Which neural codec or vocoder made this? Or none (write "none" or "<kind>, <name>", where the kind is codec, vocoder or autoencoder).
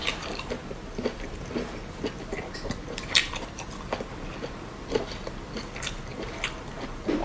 none